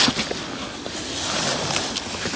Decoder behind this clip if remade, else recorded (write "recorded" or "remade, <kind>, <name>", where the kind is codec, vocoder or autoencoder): recorded